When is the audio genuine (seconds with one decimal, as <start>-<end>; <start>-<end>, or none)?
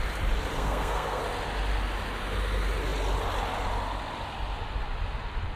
0.0-0.5; 1.2-5.6